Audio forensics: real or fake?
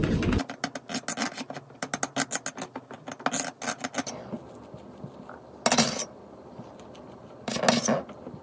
real